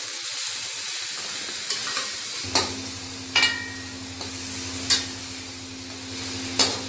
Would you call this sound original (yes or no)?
yes